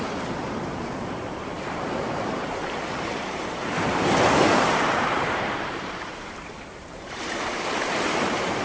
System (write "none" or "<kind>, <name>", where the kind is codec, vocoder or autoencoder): vocoder, BigVGAN v2